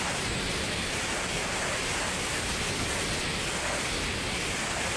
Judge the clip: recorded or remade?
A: remade